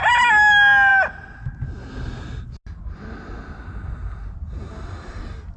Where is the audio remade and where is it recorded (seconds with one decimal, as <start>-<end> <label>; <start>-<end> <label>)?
0.0-5.6 recorded